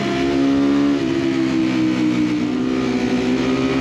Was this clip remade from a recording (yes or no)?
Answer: no